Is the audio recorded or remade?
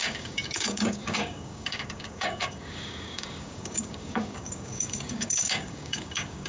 remade